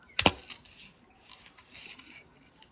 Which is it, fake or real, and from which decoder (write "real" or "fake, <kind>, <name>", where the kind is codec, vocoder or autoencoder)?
real